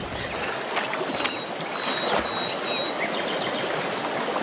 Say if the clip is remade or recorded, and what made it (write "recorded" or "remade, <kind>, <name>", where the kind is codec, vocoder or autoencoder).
recorded